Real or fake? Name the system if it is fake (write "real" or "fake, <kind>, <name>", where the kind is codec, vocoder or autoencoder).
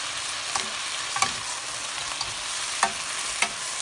real